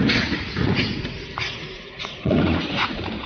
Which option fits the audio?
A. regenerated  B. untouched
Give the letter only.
A